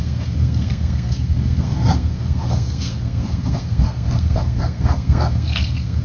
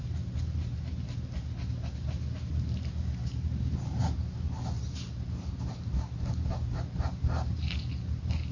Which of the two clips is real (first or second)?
second